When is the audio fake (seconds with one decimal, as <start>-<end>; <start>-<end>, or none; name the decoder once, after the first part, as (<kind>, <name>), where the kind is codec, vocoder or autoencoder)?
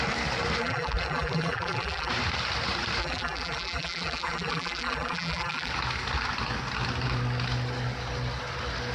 0.6-2.1 (vocoder, BigVGAN v2); 3.0-5.7